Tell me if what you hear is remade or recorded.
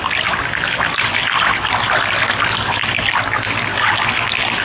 recorded